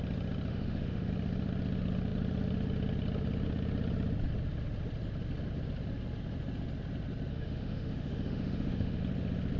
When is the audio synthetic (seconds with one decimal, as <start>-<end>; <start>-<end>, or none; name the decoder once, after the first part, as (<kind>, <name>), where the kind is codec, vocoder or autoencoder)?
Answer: 0.5-1.1 (autoencoder, DAC-VAE); 7.3-9.0